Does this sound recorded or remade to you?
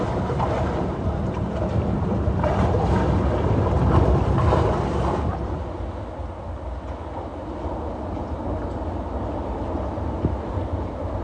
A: recorded